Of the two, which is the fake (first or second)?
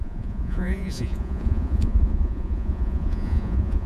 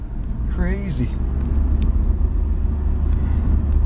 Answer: first